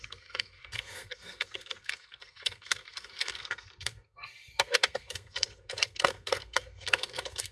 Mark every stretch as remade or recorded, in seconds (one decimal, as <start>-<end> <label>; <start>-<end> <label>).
0.0-7.5 remade